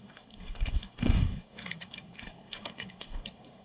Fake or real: fake